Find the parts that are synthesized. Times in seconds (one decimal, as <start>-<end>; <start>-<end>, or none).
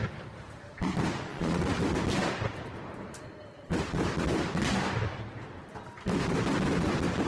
1.3-1.8